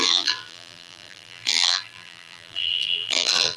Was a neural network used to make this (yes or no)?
yes